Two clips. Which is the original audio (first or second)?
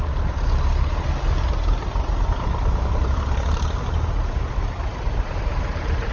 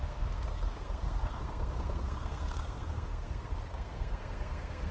first